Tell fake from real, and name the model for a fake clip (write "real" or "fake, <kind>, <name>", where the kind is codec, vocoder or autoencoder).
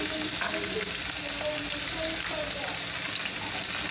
real